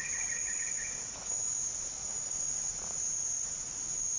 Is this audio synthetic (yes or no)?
yes